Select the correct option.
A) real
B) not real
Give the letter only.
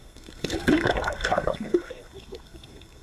B